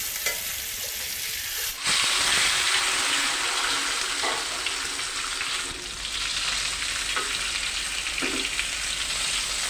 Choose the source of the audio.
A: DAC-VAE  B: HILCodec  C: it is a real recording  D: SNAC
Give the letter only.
C